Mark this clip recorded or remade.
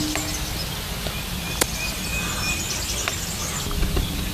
recorded